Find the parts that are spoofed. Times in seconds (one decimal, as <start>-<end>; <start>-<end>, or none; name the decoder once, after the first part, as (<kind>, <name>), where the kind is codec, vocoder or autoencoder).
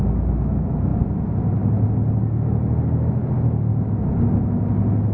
none